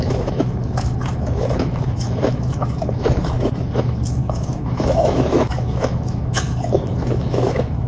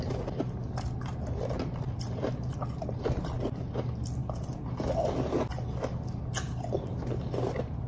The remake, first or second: first